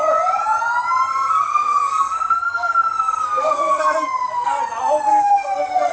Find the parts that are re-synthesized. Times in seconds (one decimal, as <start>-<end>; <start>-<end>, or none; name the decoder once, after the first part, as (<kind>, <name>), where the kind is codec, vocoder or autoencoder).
1.1-4.6 (codec, SNAC); 5.1-5.9